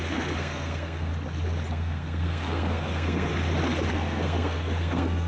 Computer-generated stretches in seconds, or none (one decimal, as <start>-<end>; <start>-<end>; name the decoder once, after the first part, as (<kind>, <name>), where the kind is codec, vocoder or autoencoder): 0.0-1.1 (codec, SNAC); 1.7-3.3; 3.9-5.3